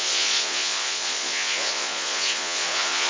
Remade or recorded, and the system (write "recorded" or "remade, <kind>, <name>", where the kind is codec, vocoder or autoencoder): remade, vocoder, Vocos